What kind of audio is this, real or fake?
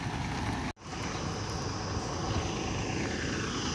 real